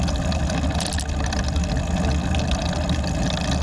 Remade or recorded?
recorded